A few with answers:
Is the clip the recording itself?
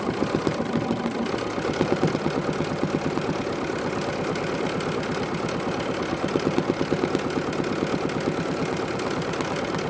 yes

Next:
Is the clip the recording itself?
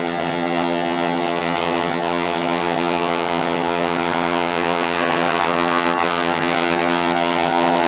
no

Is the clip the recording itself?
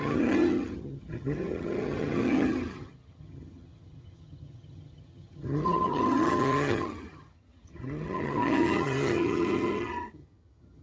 no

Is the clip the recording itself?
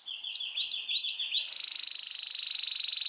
yes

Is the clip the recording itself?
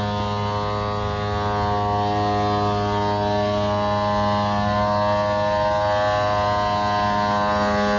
yes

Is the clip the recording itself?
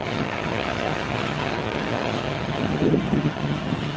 no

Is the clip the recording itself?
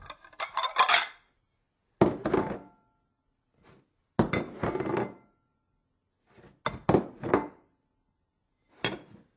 yes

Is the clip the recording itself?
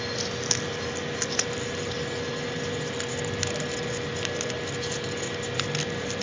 yes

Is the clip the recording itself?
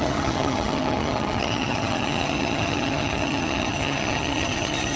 no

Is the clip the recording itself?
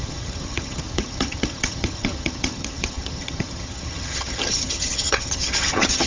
no